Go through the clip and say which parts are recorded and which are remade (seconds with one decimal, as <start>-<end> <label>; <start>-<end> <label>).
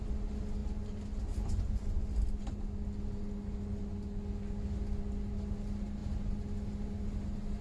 0.0-7.6 recorded